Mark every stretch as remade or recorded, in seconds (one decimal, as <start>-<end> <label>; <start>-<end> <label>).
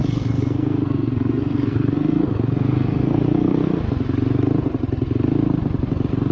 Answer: 0.0-3.8 remade; 3.8-6.3 recorded